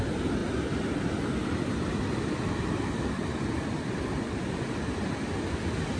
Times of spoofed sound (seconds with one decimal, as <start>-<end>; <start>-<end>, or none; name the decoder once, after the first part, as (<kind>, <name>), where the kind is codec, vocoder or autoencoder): none